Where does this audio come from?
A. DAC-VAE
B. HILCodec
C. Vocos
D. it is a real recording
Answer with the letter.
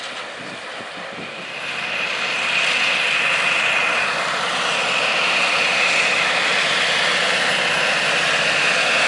D